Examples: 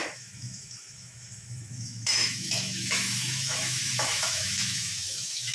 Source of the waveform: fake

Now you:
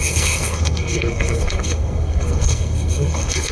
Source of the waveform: fake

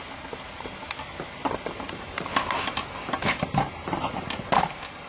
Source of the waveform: real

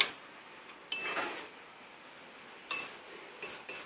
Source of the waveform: real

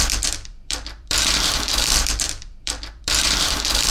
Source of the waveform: fake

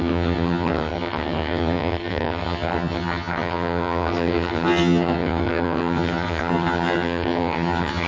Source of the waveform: fake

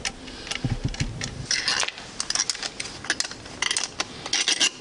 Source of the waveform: real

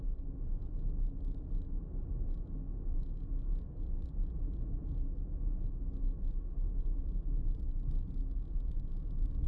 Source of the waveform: real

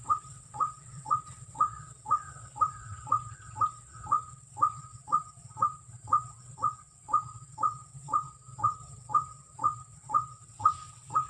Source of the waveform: fake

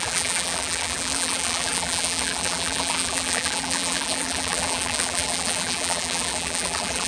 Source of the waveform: fake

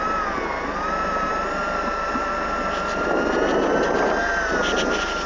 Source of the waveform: real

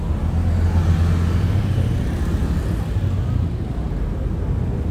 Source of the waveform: real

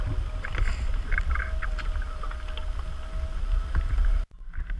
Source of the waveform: real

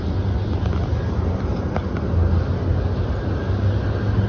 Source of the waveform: real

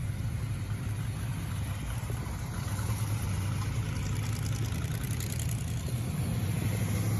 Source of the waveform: real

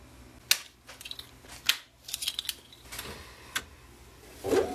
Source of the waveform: real